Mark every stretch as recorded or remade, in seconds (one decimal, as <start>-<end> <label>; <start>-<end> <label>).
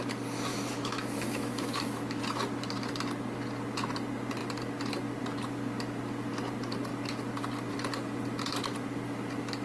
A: 0.0-0.5 recorded; 0.5-2.2 remade; 2.2-9.6 recorded